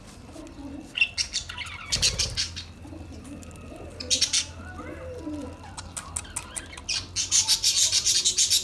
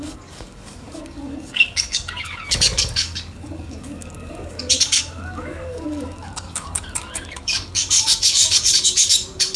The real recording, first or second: first